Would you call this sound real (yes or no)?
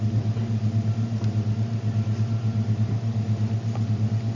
yes